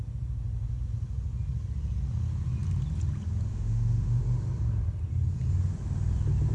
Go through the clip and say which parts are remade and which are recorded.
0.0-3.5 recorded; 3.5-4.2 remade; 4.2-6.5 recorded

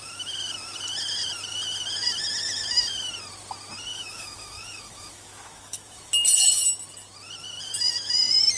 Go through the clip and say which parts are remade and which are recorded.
0.0-3.9 recorded; 3.9-6.1 remade; 6.1-8.6 recorded

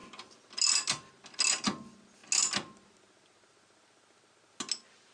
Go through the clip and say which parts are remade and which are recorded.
0.0-5.1 recorded

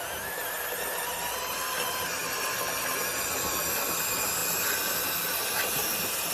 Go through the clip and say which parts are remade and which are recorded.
0.0-6.3 recorded

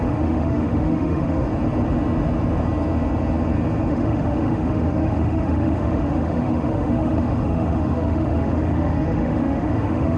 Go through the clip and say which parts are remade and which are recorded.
0.0-1.5 remade; 1.5-3.9 recorded; 3.9-10.2 remade